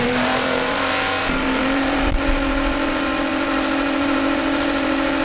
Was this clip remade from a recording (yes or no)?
yes